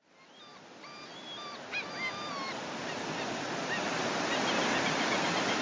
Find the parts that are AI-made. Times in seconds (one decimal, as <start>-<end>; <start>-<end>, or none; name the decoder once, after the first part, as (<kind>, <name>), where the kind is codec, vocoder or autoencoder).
none

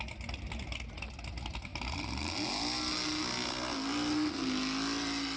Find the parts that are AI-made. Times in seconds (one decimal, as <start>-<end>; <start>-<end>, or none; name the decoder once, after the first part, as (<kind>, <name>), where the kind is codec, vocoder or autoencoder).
none

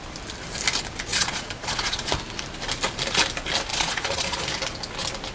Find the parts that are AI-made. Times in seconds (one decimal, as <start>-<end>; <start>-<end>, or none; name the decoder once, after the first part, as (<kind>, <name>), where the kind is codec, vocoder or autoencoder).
1.1-2.1 (vocoder, Vocos); 3.7-4.4

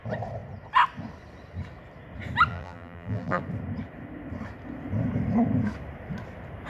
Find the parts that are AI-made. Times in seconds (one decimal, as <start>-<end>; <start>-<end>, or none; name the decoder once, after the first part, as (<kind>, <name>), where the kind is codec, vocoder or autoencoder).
2.5-3.4 (vocoder, BigVGAN v2)

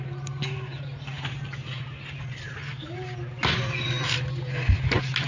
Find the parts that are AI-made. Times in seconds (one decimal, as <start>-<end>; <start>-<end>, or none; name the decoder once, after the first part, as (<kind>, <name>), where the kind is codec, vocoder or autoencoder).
none